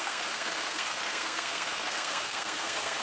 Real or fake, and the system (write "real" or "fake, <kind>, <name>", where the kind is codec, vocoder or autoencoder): fake, codec, SNAC